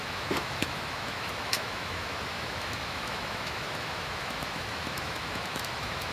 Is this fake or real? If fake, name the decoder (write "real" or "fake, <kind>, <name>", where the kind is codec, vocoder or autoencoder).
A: fake, autoencoder, DAC-VAE